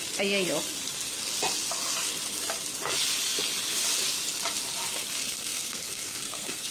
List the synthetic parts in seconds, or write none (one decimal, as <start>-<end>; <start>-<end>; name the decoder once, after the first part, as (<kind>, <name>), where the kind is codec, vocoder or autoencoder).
5.2-6.7 (codec, SNAC)